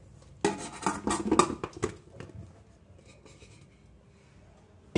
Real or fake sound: real